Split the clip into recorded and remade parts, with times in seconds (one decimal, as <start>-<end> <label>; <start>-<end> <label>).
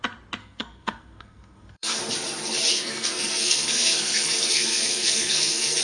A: 0.0-0.4 recorded; 0.4-2.0 remade; 2.0-2.7 recorded; 2.7-5.8 remade